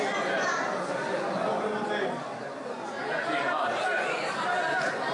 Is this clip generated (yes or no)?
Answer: no